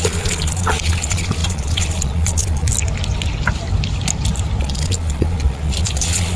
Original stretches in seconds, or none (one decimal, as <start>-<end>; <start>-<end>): 2.7-4.6